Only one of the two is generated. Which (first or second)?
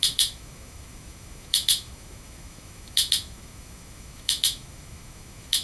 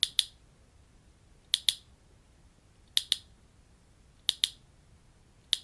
first